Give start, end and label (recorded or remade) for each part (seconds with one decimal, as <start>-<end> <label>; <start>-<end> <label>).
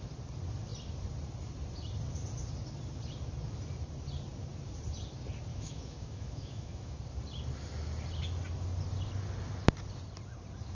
0.0-5.5 recorded; 5.5-7.0 remade; 7.0-10.7 recorded